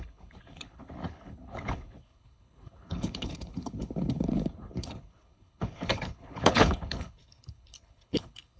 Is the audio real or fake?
fake